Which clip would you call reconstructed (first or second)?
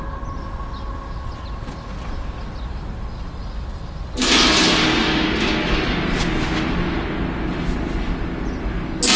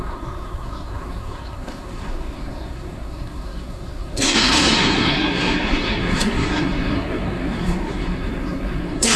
second